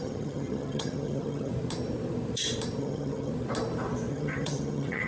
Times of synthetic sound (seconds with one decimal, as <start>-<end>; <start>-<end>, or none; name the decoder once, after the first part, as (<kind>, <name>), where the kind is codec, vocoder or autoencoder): 0.0-1.5 (vocoder, HiFi-GAN); 2.8-3.3; 4.1-5.1